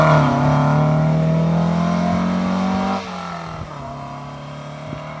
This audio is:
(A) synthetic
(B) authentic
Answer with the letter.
B